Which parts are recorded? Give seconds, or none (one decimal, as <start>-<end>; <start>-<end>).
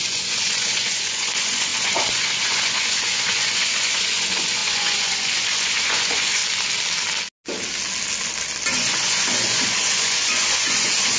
6.4-8.7